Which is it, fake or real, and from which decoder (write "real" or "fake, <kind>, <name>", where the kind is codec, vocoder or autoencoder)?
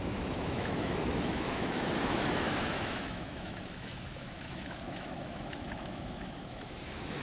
fake, autoencoder, DAC-VAE